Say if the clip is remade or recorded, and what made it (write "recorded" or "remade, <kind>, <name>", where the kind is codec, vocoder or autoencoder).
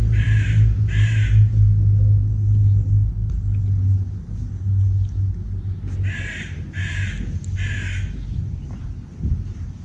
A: recorded